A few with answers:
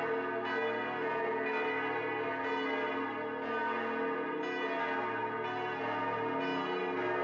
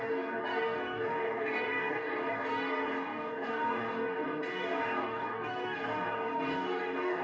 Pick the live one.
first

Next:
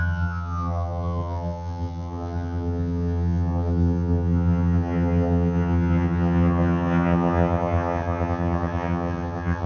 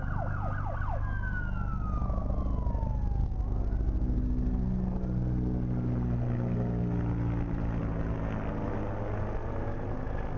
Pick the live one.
second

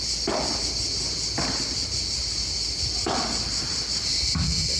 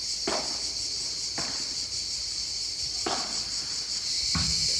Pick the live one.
first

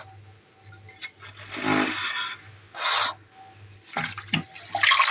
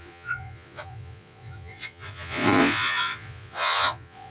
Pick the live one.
first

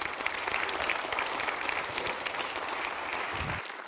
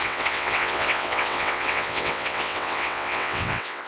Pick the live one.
first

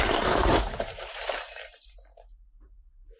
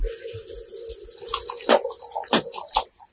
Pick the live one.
second